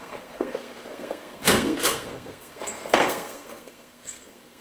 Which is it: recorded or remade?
remade